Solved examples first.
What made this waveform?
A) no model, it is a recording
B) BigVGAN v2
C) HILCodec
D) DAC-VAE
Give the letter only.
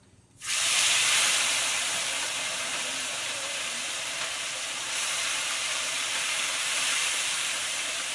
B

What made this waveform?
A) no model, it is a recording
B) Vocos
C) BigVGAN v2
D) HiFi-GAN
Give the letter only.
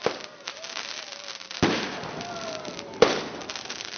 C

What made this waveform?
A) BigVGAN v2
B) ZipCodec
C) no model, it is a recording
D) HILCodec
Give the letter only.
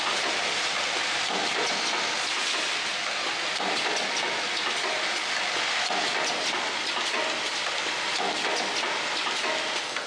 C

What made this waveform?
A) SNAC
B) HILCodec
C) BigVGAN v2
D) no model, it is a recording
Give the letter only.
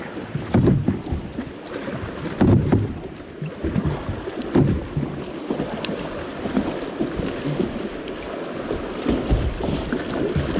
D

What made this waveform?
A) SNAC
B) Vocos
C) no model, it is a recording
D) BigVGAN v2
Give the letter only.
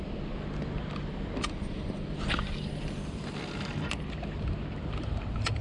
C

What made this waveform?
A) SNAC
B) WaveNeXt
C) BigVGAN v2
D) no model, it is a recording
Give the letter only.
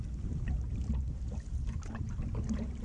D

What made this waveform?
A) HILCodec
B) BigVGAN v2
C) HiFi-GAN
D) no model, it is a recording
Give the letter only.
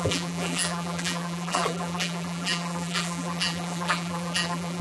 B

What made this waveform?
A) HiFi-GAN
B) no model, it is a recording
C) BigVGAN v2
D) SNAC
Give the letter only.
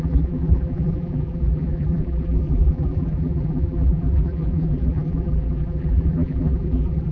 C